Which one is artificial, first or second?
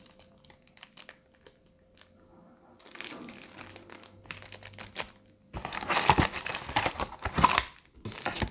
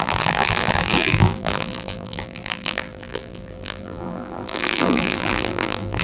second